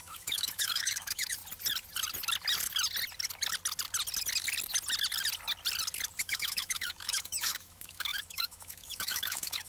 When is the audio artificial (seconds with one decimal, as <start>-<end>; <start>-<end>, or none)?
0.0-1.4; 6.2-9.7